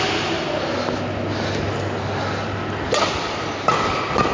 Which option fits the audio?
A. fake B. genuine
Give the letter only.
B